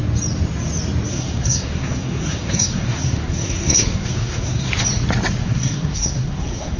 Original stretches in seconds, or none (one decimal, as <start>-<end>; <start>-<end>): 0.0-1.1; 4.7-5.4